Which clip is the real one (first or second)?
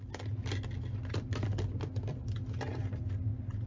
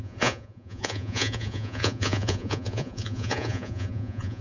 first